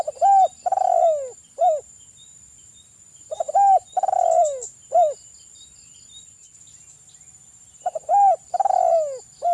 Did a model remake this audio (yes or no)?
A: no